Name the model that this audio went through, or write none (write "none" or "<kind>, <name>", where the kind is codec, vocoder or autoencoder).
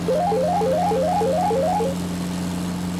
none